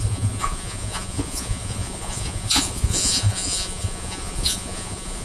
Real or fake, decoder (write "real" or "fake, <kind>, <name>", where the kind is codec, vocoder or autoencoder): fake, vocoder, Vocos